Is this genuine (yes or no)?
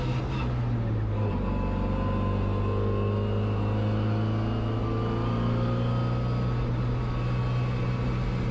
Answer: yes